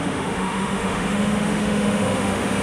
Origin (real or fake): fake